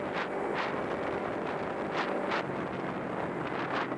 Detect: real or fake real